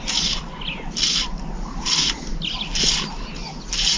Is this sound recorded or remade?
recorded